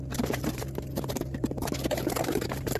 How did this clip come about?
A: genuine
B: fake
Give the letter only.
B